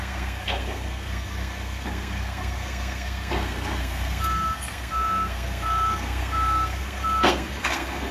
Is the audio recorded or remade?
remade